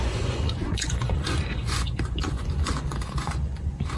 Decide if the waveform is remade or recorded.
remade